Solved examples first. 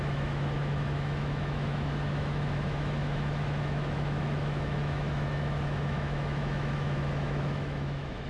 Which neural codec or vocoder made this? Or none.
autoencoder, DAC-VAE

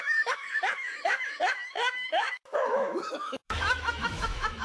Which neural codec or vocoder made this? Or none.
autoencoder, DAC-VAE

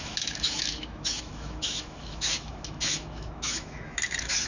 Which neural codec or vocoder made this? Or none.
autoencoder, DAC-VAE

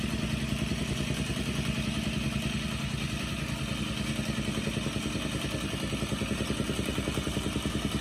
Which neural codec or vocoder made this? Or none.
none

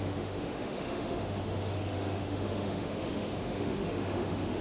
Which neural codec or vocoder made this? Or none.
autoencoder, DAC-VAE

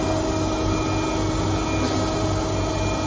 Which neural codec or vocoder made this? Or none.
none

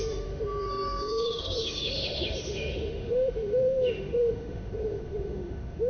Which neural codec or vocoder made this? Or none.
autoencoder, DAC-VAE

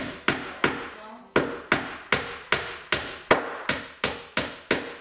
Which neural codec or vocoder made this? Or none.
none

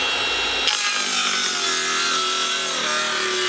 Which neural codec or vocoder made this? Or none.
none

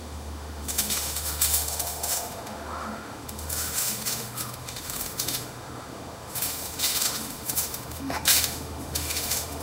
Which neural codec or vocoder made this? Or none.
autoencoder, DAC-VAE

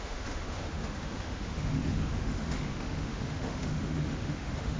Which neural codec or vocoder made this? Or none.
autoencoder, DAC-VAE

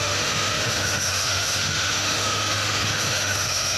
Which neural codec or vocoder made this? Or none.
autoencoder, DAC-VAE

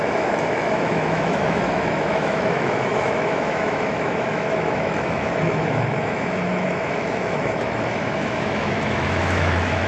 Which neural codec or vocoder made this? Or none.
autoencoder, DAC-VAE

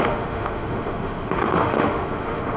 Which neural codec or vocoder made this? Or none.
autoencoder, DAC-VAE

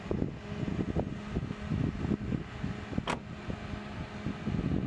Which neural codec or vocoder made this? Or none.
none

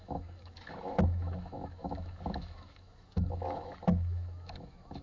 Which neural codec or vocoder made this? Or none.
autoencoder, DAC-VAE